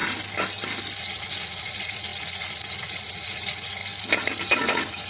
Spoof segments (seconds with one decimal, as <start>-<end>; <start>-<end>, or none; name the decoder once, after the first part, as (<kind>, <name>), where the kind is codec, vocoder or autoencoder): 1.0-3.8 (vocoder, Vocos); 4.5-5.1